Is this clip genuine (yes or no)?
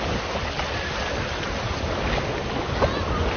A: yes